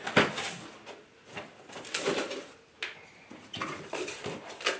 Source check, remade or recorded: recorded